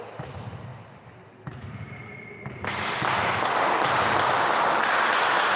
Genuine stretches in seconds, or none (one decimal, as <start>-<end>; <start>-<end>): 0.0-5.6